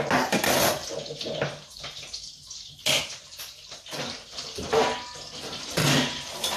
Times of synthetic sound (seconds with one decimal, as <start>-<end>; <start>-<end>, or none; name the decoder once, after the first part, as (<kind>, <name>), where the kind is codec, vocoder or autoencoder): 0.8-4.8 (vocoder, BigVGAN v2); 5.8-6.6